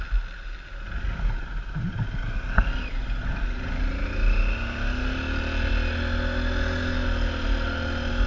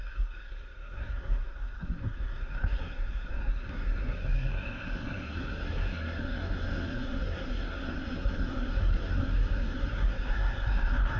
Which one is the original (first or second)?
first